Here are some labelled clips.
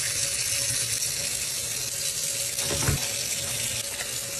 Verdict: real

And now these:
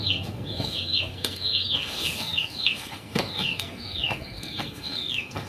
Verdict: fake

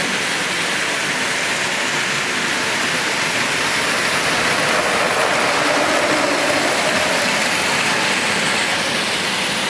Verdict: real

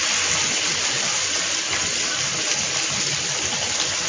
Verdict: real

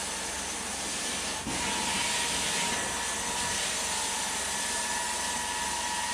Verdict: real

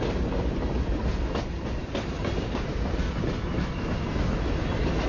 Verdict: real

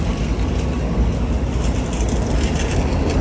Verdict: real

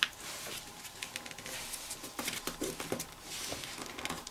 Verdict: real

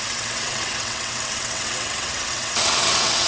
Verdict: fake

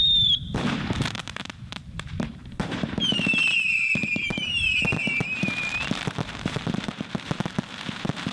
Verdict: fake